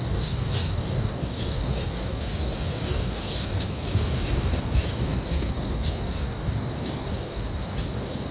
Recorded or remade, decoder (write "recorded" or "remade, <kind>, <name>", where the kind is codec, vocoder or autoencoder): remade, codec, DAC